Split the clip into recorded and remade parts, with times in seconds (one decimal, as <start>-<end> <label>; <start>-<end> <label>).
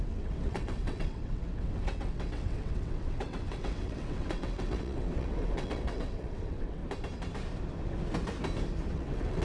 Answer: 0.0-6.8 remade; 6.8-8.9 recorded; 8.9-9.4 remade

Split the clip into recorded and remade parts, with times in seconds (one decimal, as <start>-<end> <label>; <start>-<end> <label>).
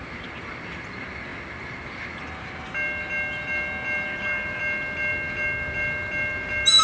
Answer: 0.0-6.8 recorded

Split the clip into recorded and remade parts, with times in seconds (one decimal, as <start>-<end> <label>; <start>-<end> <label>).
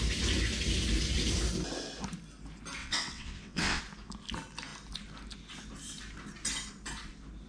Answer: 0.0-2.8 recorded; 2.8-3.8 remade; 3.8-7.5 recorded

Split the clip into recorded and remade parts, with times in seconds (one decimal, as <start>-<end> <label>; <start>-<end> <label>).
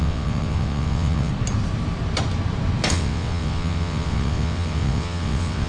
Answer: 0.0-1.3 remade; 1.3-2.9 recorded; 2.9-5.7 remade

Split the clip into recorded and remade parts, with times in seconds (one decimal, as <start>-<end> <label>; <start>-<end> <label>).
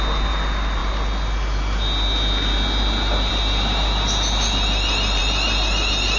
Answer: 0.0-6.2 recorded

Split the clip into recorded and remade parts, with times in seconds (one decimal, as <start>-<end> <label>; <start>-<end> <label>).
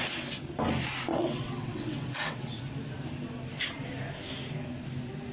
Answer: 0.0-1.1 recorded; 1.1-2.6 remade; 2.6-5.3 recorded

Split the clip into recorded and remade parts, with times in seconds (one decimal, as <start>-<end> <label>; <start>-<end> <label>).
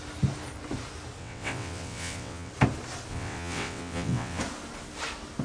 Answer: 0.0-1.2 recorded; 1.2-2.5 remade; 2.5-3.1 recorded; 3.1-4.4 remade; 4.4-5.4 recorded